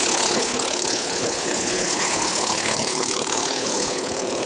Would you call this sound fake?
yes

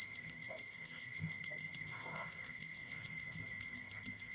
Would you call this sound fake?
yes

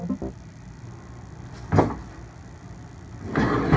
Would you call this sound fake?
no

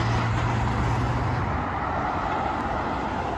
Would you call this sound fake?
no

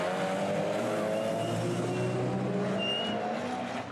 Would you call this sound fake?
no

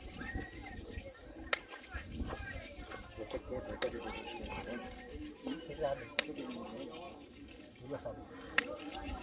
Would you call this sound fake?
no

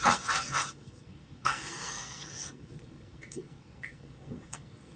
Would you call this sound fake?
yes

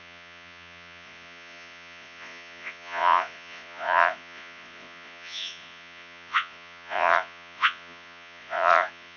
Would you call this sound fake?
yes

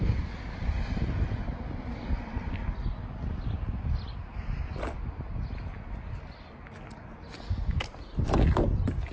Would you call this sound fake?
no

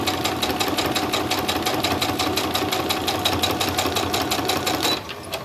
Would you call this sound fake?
no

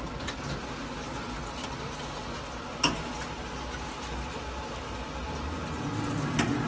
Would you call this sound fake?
no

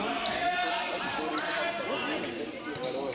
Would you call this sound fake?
no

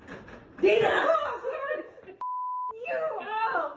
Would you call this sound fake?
no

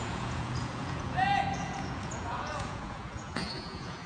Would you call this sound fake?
yes